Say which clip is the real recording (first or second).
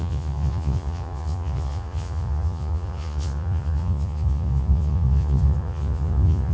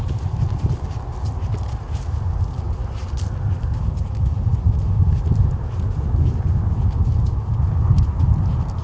second